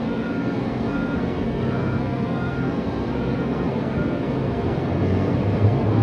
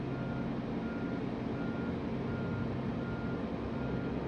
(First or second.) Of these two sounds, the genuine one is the second